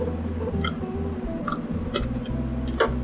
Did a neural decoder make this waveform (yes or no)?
no